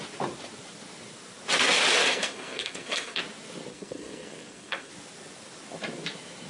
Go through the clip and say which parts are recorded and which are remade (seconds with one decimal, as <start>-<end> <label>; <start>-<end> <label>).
0.0-2.0 recorded; 2.0-3.2 remade; 3.2-3.7 recorded; 3.7-4.9 remade; 4.9-6.5 recorded